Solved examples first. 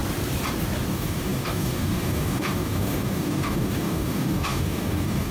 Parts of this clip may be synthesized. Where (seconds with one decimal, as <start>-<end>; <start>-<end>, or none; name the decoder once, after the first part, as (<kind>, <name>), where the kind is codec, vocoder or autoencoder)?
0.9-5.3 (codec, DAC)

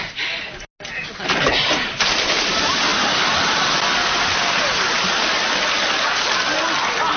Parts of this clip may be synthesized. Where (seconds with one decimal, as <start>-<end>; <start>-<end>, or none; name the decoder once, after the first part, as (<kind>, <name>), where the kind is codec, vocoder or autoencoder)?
none

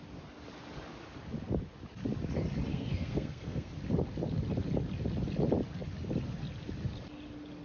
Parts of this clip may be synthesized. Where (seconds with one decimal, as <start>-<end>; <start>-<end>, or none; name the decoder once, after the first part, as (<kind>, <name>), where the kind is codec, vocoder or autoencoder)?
2.7-3.7 (codec, SNAC)

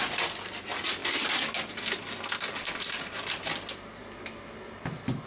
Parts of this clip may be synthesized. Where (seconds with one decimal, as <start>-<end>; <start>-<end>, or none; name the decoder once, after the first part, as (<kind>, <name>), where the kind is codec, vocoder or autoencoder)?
none

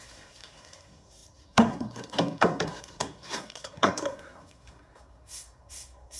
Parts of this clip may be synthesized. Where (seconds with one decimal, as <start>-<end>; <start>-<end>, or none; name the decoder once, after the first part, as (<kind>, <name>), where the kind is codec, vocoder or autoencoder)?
0.0-6.2 (codec, SNAC)